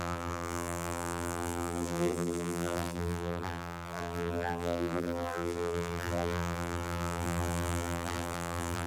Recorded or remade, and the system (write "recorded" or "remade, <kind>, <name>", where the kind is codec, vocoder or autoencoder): remade, vocoder, BigVGAN v2